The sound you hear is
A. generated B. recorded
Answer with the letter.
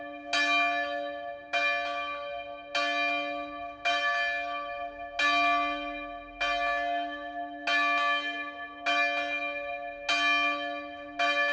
B